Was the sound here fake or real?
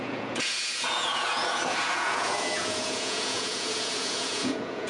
fake